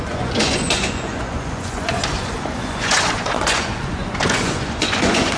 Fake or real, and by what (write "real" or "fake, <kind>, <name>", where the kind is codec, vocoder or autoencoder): fake, vocoder, Vocos